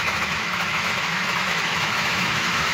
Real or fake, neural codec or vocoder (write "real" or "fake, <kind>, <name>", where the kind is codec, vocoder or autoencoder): fake, autoencoder, DAC-VAE